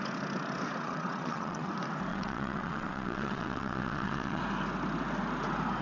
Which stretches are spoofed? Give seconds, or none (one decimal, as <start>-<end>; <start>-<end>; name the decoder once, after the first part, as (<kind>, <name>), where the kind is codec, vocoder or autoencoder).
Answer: 0.8-1.7 (vocoder, WaveNeXt); 2.1-4.4